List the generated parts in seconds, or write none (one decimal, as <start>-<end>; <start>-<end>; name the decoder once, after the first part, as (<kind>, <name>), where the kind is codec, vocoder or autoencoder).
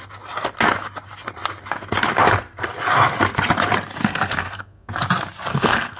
4.0-4.9 (codec, SNAC); 5.5-6.0